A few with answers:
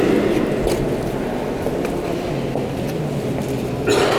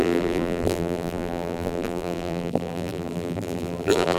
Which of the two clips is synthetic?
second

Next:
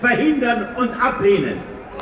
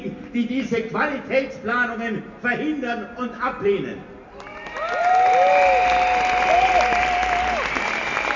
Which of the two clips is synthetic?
first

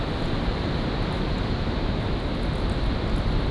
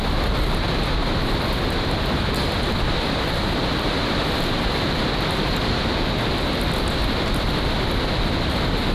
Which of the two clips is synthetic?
second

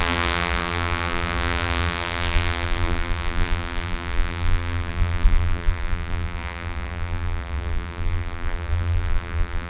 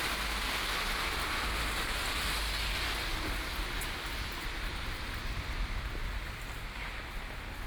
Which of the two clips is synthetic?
first